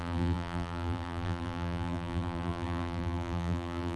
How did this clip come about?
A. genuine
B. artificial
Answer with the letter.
B